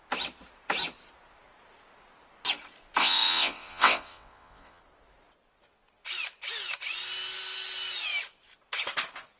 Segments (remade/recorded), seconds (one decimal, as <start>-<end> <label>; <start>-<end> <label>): 0.0-3.0 recorded; 3.0-4.8 remade; 4.8-9.4 recorded